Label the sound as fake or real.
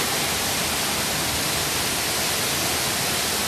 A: real